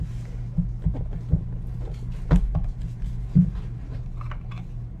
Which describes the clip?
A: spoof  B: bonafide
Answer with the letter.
B